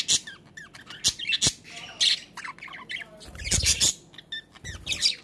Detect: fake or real real